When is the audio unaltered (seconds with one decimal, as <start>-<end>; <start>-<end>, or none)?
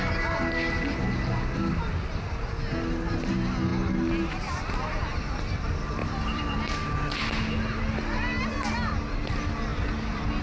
0.0-6.0; 6.6-9.7